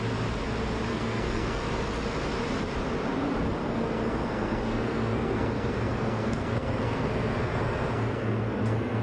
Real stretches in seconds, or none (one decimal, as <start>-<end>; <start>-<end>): 0.0-0.9; 1.6-3.6

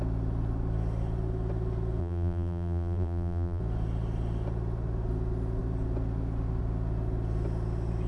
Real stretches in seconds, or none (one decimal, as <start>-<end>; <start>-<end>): 0.0-2.0; 3.6-8.1

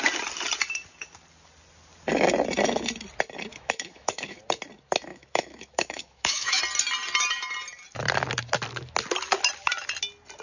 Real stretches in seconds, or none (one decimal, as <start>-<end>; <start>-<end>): 0.0-3.5; 4.4-5.1; 6.6-10.4

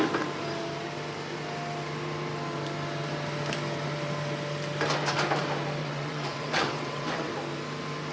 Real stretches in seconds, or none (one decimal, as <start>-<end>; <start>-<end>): 0.0-5.8; 7.3-8.1

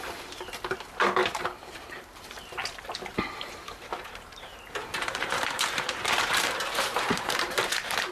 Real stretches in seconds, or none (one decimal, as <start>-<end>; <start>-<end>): 0.0-1.2; 2.4-3.1

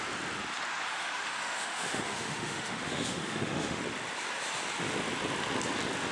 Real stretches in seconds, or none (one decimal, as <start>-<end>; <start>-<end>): 0.0-0.9; 3.8-6.1

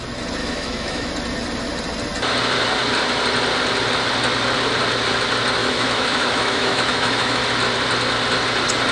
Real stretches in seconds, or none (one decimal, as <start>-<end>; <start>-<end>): 0.0-0.4; 1.1-5.6; 7.4-8.9

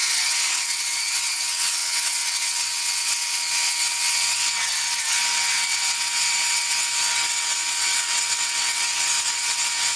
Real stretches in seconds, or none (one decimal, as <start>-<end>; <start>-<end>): none